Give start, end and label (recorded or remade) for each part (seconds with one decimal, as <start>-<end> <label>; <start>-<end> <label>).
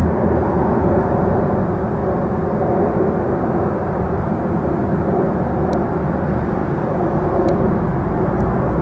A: 0.0-8.8 recorded